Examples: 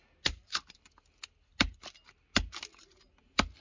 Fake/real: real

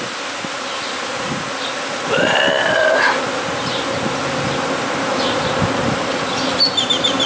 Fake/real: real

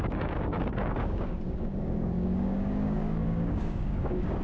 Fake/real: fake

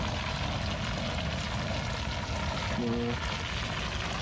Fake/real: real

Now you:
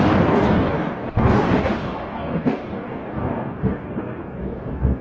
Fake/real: fake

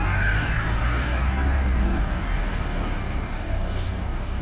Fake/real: fake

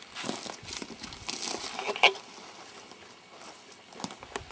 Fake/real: real